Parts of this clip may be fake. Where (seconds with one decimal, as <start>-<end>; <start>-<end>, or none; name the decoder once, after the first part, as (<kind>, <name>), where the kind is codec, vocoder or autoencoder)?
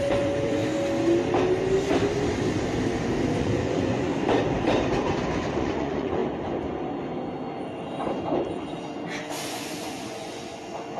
0.0-0.6 (vocoder, Vocos); 3.4-4.1; 5.5-6.2; 9.5-11.0